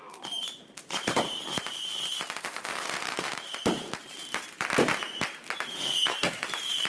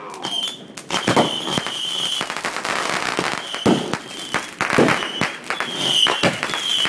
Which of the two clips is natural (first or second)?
second